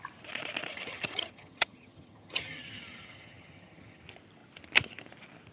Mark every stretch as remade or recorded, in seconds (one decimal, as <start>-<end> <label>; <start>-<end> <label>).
0.0-0.7 recorded; 0.7-4.0 remade; 4.0-5.5 recorded